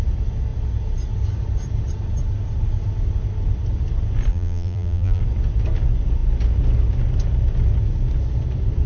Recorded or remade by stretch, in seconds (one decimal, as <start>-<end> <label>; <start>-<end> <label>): 0.0-4.3 recorded; 4.3-5.2 remade; 5.2-8.9 recorded